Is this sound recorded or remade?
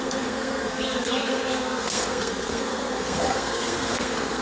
remade